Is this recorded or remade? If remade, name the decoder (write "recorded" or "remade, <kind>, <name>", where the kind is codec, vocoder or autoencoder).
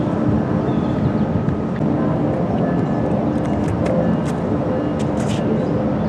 recorded